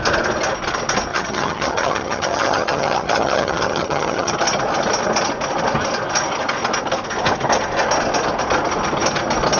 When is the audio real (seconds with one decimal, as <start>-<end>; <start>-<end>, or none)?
0.0-1.1; 4.3-9.6